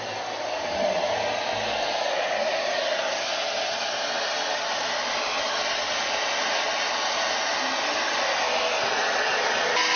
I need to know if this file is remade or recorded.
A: recorded